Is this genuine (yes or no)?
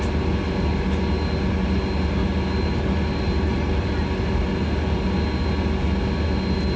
yes